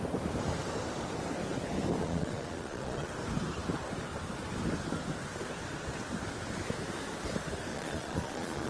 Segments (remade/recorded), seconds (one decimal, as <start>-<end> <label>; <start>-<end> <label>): 0.0-2.0 recorded; 2.0-3.1 remade; 3.1-7.7 recorded; 7.7-8.7 remade